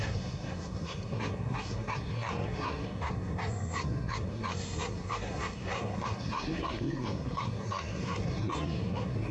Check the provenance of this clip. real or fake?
fake